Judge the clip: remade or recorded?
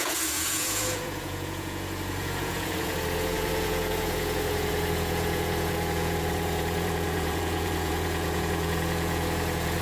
remade